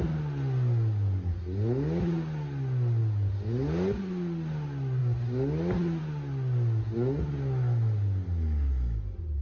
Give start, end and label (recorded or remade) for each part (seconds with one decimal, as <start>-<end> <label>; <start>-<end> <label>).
0.0-9.4 recorded